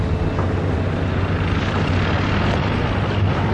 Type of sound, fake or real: real